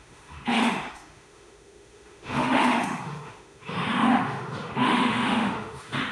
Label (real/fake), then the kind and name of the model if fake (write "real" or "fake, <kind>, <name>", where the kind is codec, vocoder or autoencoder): fake, autoencoder, DAC-VAE